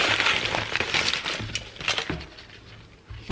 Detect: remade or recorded recorded